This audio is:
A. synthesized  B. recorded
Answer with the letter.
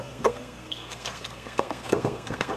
A